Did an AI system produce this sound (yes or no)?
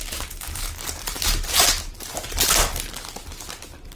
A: no